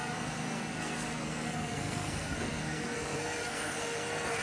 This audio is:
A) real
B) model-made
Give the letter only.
B